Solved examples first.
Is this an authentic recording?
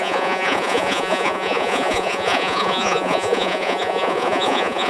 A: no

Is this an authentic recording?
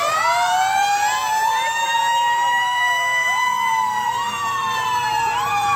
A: no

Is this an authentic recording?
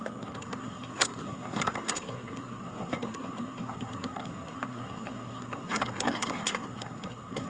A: no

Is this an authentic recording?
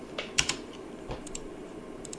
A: no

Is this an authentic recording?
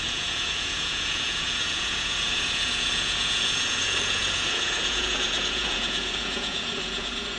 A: no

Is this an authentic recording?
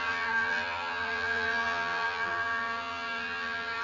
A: no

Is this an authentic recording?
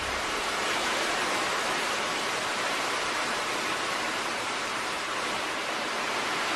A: no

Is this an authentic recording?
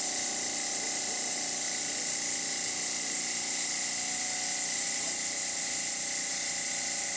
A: yes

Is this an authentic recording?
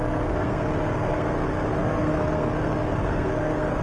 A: no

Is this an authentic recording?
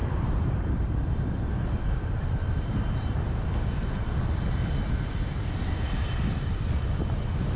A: no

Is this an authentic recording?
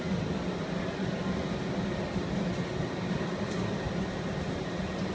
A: yes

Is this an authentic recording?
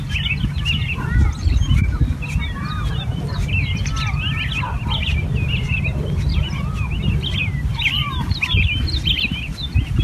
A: yes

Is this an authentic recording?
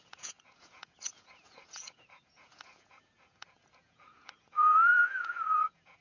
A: no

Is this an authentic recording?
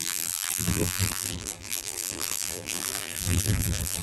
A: no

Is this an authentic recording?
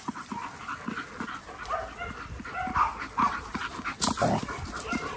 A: yes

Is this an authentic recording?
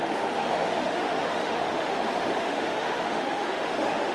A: no